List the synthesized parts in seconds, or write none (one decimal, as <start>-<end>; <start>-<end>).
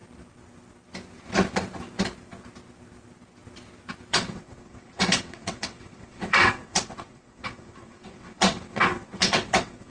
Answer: 4.1-9.9